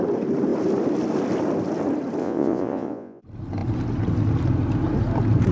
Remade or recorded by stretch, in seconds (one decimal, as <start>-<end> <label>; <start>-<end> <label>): 0.0-2.2 recorded; 2.2-3.2 remade; 3.2-5.5 recorded